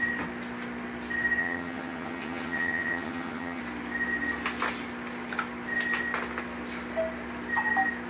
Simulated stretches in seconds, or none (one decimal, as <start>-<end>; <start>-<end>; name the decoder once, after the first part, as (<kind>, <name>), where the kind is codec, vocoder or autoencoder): 1.4-3.6 (vocoder, HiFi-GAN)